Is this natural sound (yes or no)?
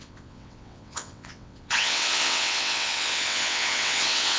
no